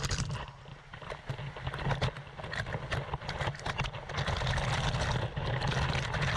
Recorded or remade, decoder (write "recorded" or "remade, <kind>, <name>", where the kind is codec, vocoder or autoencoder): recorded